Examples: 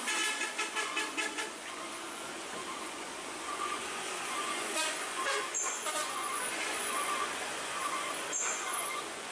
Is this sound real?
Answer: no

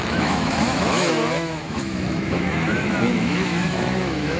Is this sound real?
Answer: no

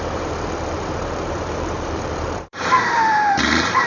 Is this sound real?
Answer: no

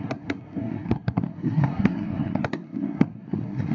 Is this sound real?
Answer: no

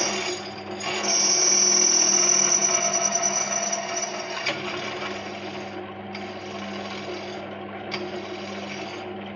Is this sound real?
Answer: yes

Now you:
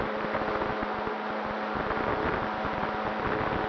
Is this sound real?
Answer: yes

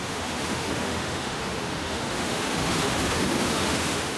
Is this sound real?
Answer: no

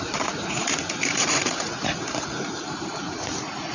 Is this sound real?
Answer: no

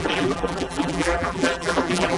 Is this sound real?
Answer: no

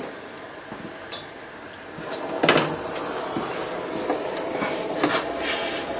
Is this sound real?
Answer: yes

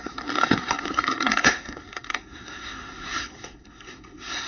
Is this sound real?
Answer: no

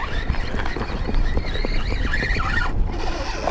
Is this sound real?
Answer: yes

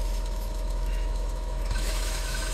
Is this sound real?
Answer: no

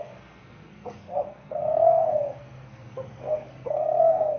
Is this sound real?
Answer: no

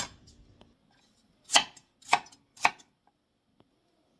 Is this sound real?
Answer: yes